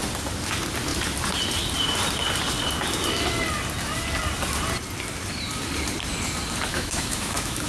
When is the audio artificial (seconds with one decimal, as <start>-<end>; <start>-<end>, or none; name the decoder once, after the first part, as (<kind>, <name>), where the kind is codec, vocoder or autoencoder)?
6.7-7.7 (autoencoder, DAC-VAE)